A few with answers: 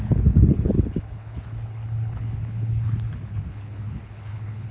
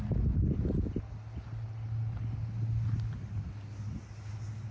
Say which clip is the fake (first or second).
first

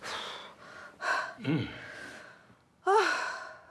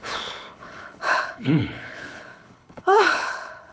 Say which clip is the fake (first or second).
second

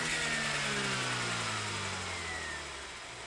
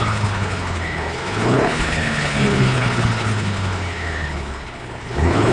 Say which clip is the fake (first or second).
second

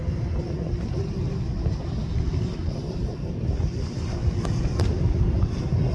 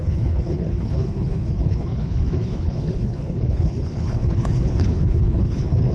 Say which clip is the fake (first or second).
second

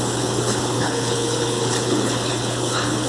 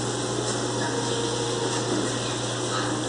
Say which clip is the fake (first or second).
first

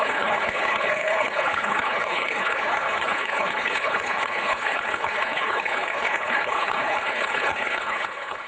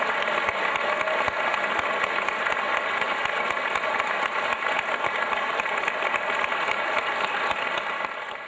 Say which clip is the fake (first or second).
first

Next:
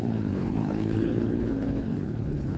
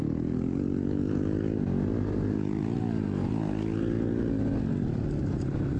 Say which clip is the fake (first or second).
first